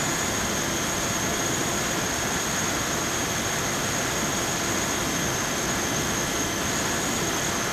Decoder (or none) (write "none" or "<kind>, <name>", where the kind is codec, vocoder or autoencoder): none